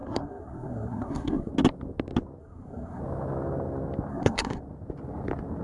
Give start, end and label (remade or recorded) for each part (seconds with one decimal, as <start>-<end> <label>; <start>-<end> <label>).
0.0-1.5 remade; 1.5-2.4 recorded; 2.4-3.0 remade; 3.0-4.1 recorded; 4.1-4.6 remade; 4.6-5.6 recorded